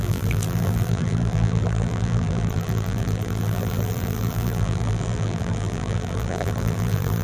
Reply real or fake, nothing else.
fake